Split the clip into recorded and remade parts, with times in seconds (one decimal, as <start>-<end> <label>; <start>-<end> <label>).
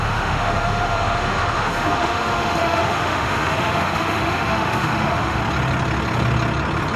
0.0-5.4 remade; 5.4-7.0 recorded